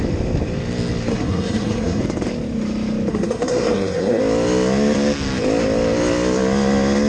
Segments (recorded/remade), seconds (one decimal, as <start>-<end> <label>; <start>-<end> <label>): 0.0-1.1 recorded; 1.1-2.0 remade; 2.0-3.1 recorded; 3.1-4.2 remade; 4.2-7.1 recorded